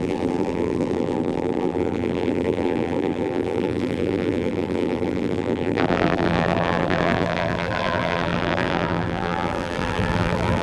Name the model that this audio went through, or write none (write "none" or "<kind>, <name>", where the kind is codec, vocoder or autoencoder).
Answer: vocoder, BigVGAN v2